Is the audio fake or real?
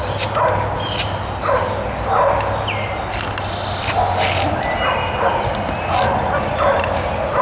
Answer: real